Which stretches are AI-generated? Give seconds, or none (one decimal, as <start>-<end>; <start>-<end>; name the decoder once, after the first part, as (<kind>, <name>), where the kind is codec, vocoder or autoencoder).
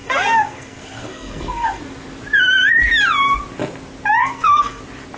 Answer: 0.0-1.8 (codec, SNAC); 4.2-4.8